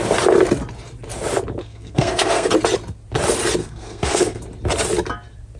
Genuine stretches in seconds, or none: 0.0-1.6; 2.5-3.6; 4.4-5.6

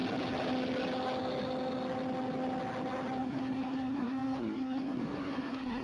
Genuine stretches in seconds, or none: 0.0-3.2

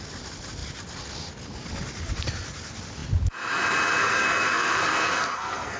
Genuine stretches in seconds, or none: 0.0-4.0

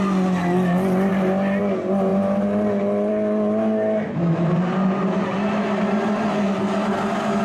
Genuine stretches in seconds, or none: 0.0-7.4

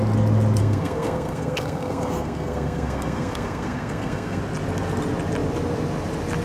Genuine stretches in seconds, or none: 0.0-0.6; 4.4-6.4

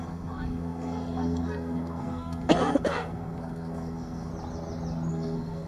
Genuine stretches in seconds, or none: 4.3-5.1

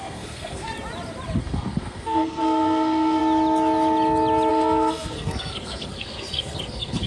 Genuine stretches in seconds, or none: 0.7-1.4; 3.2-4.5